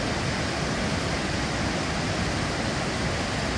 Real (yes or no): yes